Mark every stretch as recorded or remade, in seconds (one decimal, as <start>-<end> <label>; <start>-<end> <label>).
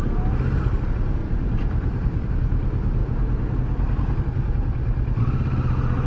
0.0-1.2 recorded; 1.2-2.3 remade; 2.3-6.1 recorded